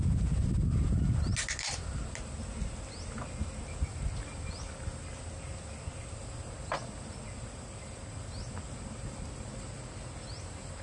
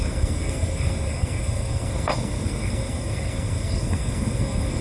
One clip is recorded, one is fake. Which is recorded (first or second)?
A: first